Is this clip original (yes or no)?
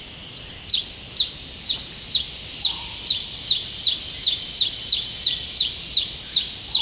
yes